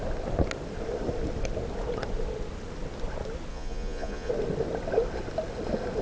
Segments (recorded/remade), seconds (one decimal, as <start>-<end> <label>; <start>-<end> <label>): 0.0-3.5 recorded; 3.5-4.3 remade; 4.3-6.0 recorded